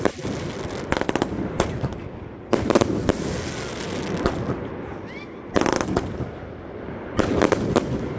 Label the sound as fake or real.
real